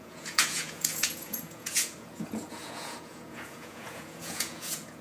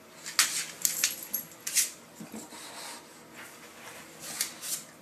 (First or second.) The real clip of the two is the second